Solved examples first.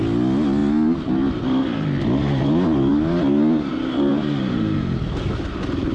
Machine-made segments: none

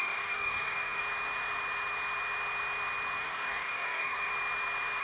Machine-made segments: 0.0-1.0 (codec, DAC); 3.2-4.3

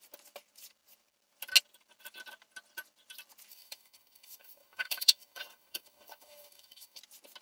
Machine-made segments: 3.5-7.0 (codec, DAC)

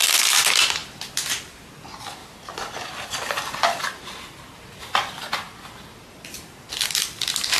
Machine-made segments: none

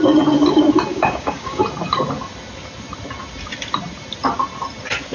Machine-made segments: 0.9-1.6 (codec, DAC)

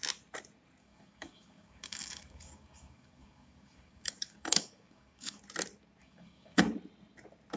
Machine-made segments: 0.8-5.4 (codec, DAC); 6.0-6.6

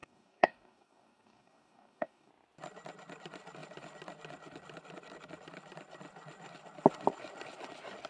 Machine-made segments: 0.0-2.3 (codec, DAC)

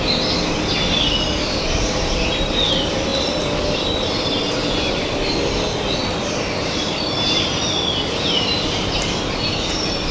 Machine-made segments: none